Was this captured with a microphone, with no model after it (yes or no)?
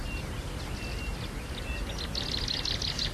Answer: yes